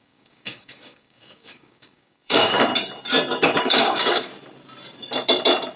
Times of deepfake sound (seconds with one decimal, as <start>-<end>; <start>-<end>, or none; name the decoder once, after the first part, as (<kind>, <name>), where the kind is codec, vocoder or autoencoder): 0.0-2.7 (codec, DAC); 3.6-4.3